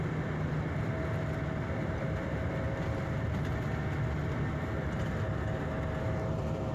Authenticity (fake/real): real